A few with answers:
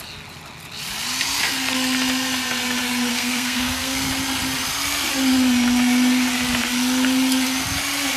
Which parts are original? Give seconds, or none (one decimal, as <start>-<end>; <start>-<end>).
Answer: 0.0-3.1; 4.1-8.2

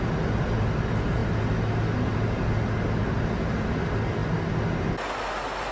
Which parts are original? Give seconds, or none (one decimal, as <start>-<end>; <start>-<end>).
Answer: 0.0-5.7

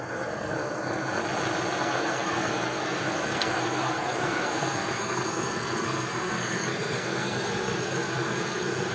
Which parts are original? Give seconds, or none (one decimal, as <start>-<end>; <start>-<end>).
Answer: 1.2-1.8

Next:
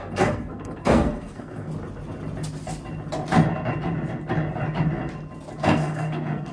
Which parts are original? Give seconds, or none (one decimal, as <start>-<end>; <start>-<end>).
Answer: 1.7-5.6

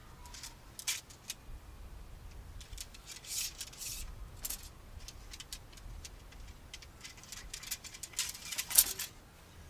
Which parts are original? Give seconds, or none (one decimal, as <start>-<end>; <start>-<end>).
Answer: 0.0-9.7

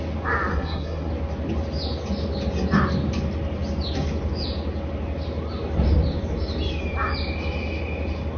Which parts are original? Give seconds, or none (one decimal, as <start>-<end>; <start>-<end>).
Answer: 0.0-0.5; 1.1-8.4

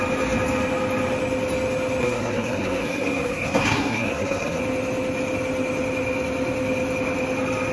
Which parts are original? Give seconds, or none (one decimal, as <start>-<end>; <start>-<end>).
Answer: 0.0-2.0; 4.6-7.7

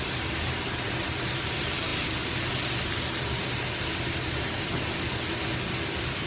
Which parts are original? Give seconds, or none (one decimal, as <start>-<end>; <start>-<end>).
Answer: 0.0-6.3